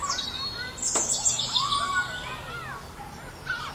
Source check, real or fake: real